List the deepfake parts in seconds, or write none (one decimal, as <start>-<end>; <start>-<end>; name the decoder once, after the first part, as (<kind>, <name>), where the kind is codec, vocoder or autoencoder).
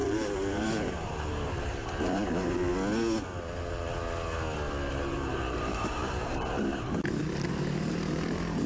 0.0-2.7 (vocoder, BigVGAN v2); 4.9-8.7